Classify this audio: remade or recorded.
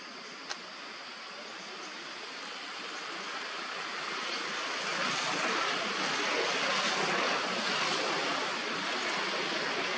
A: recorded